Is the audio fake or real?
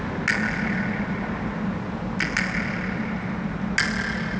real